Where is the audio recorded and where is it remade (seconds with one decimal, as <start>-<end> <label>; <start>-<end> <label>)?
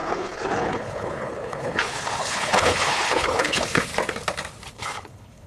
0.0-3.9 remade; 3.9-4.7 recorded; 4.7-5.5 remade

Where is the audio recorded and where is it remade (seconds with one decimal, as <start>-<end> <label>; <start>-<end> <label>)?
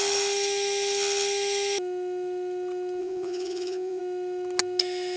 0.0-3.0 recorded; 3.0-4.0 remade; 4.0-5.2 recorded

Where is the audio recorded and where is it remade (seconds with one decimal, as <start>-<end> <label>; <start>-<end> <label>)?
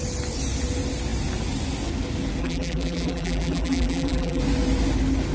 0.0-2.4 recorded; 2.4-4.4 remade; 4.4-5.3 recorded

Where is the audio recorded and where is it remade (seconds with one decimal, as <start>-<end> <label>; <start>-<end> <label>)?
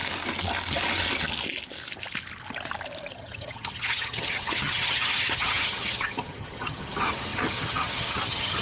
0.0-3.1 recorded; 3.1-8.6 remade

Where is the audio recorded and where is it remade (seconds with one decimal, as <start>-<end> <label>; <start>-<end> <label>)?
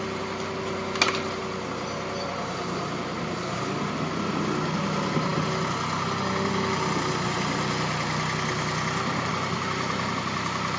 0.0-10.8 recorded